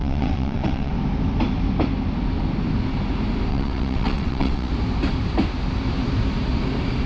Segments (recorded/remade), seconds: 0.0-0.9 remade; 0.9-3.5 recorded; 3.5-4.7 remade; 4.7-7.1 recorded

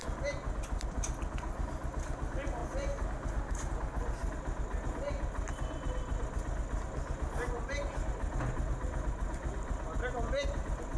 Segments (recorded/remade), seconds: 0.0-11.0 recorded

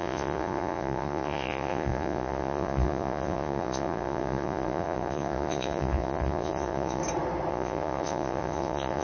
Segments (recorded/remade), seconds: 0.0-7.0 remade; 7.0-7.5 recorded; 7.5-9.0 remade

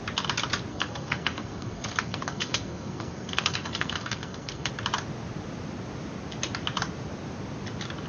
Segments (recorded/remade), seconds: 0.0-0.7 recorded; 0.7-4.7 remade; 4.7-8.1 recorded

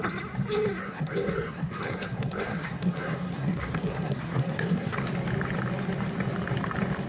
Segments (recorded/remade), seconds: 0.0-0.8 recorded; 0.8-5.0 remade; 5.0-7.1 recorded

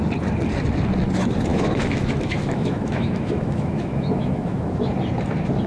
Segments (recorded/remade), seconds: 0.0-1.5 recorded; 1.5-4.9 remade; 4.9-5.7 recorded

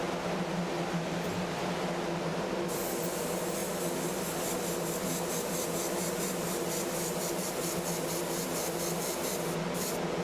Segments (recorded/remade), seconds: 0.0-10.2 recorded